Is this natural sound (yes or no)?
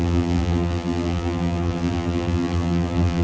no